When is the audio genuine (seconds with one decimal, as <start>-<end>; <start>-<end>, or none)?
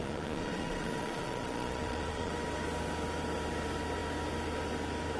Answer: 2.3-5.2